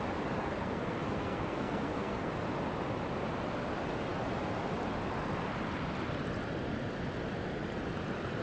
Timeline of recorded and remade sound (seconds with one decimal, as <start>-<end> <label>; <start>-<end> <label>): 0.0-0.4 recorded; 0.4-2.3 remade; 2.3-8.4 recorded